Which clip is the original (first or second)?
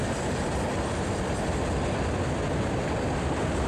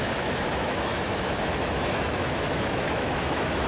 first